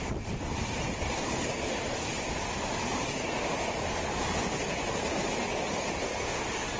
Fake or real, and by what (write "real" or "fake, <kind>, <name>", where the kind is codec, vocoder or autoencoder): real